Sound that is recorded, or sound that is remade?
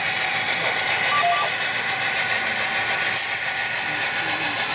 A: recorded